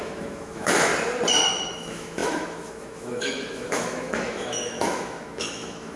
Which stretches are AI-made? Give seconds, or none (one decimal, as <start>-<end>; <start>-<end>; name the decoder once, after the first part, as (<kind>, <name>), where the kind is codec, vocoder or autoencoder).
0.0-0.9 (autoencoder, DAC-VAE); 1.5-6.0